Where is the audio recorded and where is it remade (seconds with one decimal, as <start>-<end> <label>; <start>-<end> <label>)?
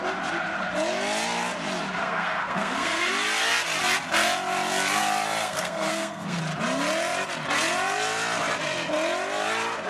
0.0-2.0 recorded; 2.0-3.1 remade; 3.1-5.4 recorded; 5.4-6.4 remade; 6.4-9.9 recorded